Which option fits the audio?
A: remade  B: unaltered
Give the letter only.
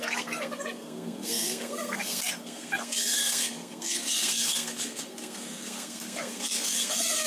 A